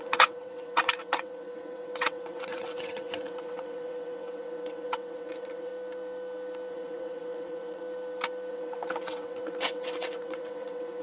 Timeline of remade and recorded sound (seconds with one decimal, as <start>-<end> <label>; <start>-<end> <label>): 0.0-5.7 remade; 5.7-6.7 recorded; 6.7-7.8 remade; 7.8-8.5 recorded; 8.5-11.0 remade